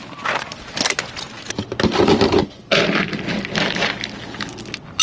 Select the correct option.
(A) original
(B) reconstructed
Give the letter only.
A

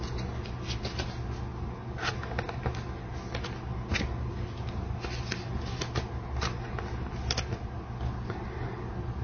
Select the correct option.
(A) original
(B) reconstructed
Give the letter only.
A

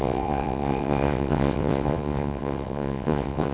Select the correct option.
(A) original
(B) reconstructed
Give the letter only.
B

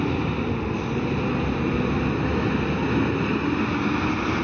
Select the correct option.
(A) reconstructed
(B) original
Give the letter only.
B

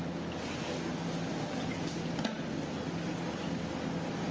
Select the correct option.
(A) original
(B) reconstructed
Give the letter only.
A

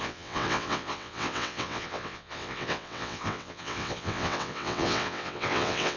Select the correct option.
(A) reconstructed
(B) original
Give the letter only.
A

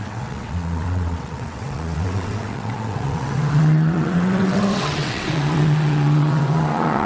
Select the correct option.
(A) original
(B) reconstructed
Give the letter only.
B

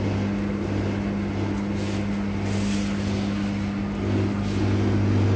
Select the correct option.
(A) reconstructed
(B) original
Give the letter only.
B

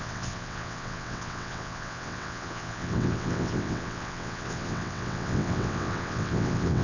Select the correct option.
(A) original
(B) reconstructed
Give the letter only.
B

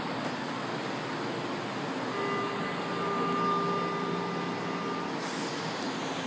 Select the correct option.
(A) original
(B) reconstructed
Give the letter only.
A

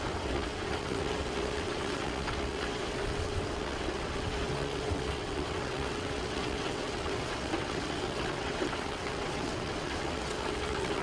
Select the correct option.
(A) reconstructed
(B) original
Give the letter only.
A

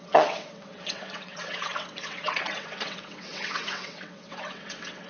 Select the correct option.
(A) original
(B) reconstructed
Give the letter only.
B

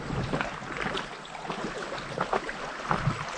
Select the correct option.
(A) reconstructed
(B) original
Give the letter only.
B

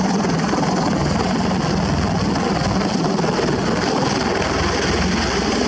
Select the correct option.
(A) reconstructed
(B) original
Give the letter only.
B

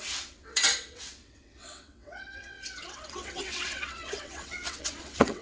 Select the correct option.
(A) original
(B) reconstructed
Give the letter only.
B